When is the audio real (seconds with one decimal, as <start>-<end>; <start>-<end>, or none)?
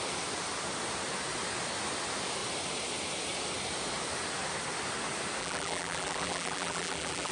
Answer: 0.0-5.4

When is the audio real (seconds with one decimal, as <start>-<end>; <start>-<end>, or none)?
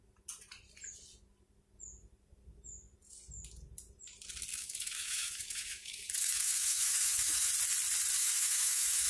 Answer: 0.0-4.5; 7.5-8.2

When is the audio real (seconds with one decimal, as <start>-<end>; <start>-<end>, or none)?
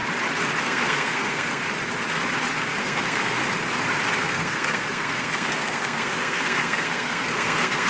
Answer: 0.0-0.6; 1.6-2.8; 3.4-4.1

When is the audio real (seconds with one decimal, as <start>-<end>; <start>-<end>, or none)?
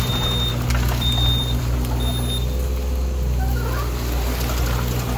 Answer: 0.0-0.5; 1.6-5.2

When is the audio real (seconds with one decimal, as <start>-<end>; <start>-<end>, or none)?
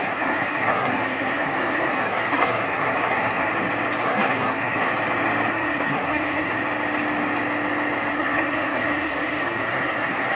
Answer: 3.5-4.0; 4.9-5.5; 6.6-8.1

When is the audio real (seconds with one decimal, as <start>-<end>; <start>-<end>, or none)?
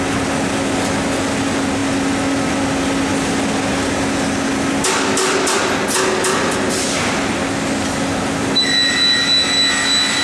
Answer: 0.0-10.2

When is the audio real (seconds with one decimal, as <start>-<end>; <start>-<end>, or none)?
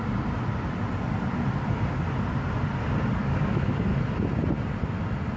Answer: 0.0-3.2; 3.9-5.4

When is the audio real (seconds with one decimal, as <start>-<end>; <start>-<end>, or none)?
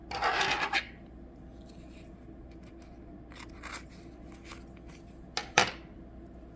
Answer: 0.0-5.4